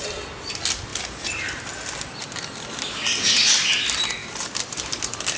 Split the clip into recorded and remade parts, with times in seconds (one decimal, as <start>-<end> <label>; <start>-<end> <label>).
0.0-4.2 recorded; 4.2-4.9 remade; 4.9-5.4 recorded